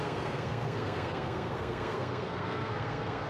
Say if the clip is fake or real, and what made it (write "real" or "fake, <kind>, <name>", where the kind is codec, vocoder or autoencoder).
fake, codec, SNAC